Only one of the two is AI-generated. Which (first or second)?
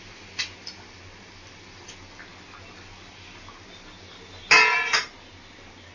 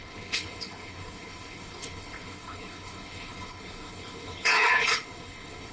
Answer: second